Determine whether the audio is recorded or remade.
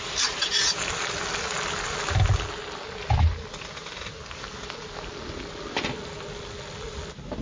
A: recorded